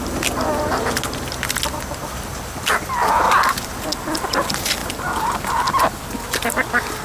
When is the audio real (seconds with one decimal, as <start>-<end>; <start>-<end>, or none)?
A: 0.0-7.0